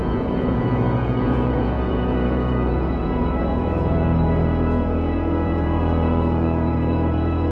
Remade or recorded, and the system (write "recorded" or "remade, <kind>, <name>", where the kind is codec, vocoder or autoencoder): remade, vocoder, Vocos